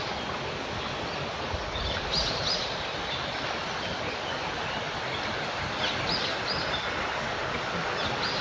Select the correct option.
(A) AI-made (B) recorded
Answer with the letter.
B